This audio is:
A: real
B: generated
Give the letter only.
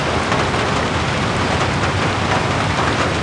A